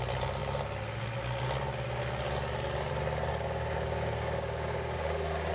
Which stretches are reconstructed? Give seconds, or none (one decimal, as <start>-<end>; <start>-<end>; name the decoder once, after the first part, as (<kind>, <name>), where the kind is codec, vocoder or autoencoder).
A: 3.3-5.5 (codec, DAC)